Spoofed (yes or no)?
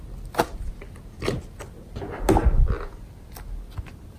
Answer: no